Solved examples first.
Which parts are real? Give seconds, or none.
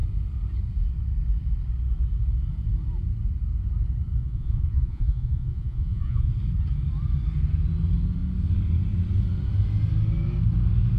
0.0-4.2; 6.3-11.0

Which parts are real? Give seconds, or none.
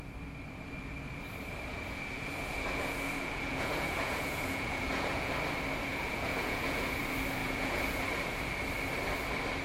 0.0-1.7; 5.3-5.9; 7.0-7.4; 8.3-9.6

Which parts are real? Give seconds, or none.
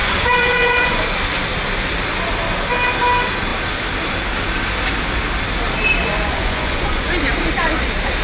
1.0-6.0; 7.1-8.2